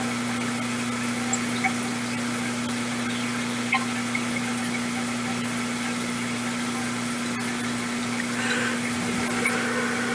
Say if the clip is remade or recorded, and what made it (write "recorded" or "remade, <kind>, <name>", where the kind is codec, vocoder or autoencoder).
recorded